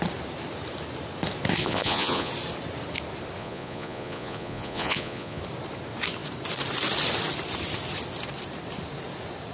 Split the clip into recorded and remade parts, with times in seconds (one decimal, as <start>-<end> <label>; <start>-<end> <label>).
0.0-1.6 recorded; 1.6-2.3 remade; 2.3-3.4 recorded; 3.4-5.4 remade; 5.4-9.5 recorded